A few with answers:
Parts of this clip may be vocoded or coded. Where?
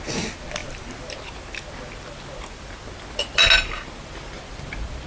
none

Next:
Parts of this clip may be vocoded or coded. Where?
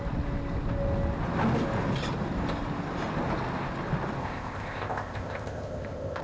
4.2-6.2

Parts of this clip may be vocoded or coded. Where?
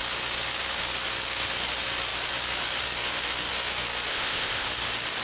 4.1-4.7